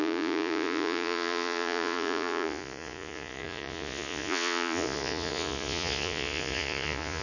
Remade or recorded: remade